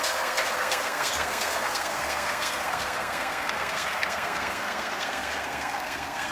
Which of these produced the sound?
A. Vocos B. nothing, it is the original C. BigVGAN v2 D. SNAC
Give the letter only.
D